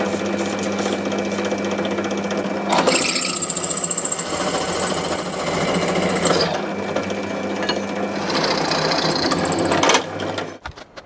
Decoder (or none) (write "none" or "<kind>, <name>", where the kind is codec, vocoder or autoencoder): none